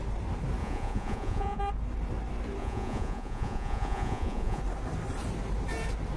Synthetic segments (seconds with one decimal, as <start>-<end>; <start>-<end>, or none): 0.6-1.6; 2.6-4.6